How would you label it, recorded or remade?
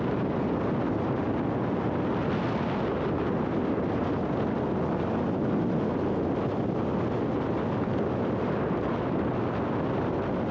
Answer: recorded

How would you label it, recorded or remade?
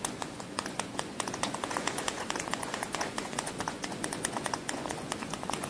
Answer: remade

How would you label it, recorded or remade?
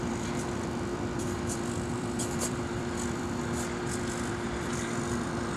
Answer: remade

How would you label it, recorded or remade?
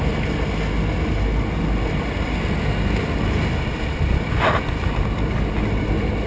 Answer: recorded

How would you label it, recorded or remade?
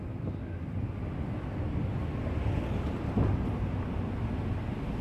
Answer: recorded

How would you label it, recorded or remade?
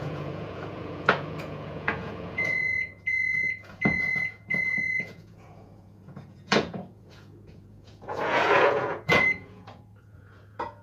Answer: remade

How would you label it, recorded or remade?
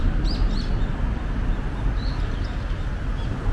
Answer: recorded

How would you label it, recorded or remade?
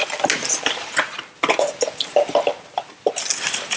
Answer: recorded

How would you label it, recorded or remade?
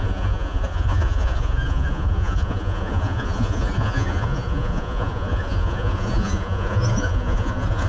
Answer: remade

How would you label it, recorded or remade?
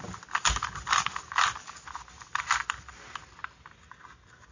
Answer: recorded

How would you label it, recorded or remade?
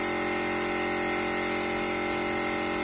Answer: recorded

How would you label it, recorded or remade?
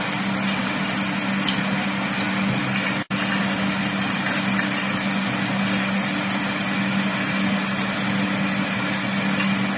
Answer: recorded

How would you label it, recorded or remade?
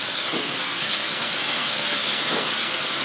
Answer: remade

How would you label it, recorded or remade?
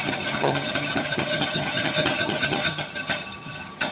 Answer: remade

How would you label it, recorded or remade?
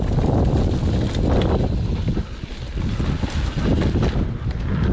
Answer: recorded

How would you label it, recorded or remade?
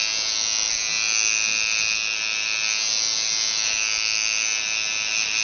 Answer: recorded